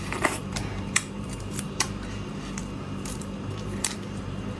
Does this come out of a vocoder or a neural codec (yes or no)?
yes